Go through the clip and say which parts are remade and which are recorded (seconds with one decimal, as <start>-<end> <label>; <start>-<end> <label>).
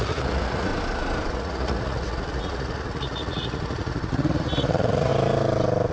0.0-0.7 remade; 0.7-1.3 recorded; 1.3-5.1 remade; 5.1-5.9 recorded